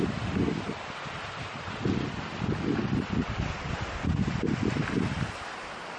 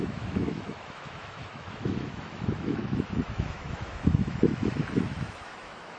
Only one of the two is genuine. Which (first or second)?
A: first